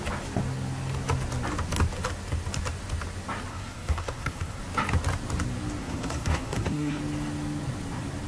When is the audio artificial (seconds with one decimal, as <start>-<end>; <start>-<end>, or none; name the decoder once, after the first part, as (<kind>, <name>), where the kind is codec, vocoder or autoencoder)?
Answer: 3.5-4.6 (codec, SNAC); 5.8-7.0